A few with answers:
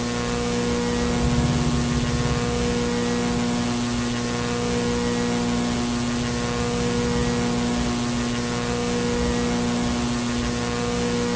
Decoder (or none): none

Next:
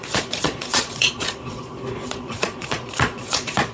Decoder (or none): vocoder, Vocos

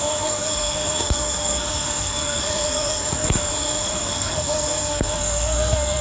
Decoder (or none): codec, SNAC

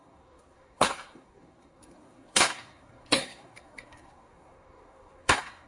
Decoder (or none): codec, SNAC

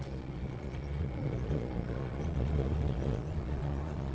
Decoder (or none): vocoder, Vocos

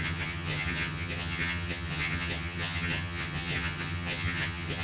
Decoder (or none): vocoder, HiFi-GAN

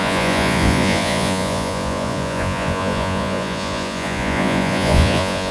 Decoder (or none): vocoder, Vocos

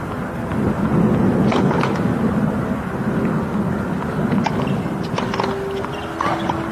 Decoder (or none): none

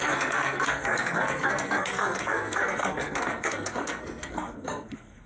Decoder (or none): codec, SNAC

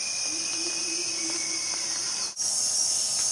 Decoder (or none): none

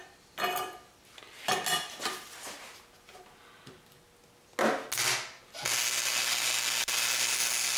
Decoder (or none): none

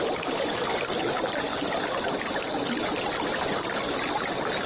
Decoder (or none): none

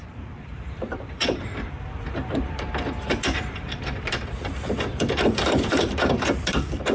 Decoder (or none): vocoder, BigVGAN v2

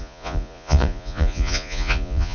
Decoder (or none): vocoder, Vocos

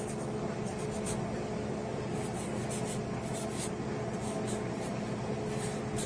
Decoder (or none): none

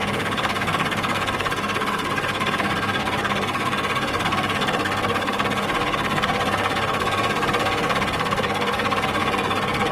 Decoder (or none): codec, SNAC